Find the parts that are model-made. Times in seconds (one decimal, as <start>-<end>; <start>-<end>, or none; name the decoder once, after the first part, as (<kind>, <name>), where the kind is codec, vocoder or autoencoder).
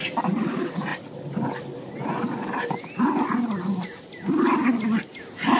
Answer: none